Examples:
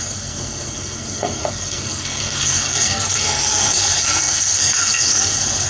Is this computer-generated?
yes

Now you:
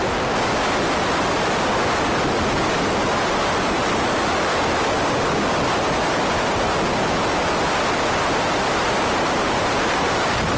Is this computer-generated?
no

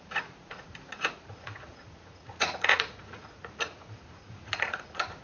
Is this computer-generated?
yes